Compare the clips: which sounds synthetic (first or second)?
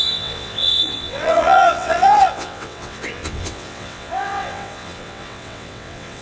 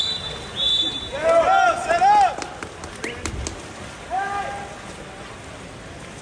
first